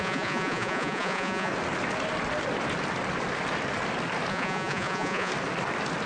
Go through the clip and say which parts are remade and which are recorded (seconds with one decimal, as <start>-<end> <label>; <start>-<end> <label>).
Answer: 0.0-1.5 remade; 1.5-4.3 recorded; 4.3-5.3 remade; 5.3-6.1 recorded